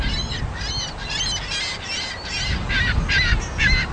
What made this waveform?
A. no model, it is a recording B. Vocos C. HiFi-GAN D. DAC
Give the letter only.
A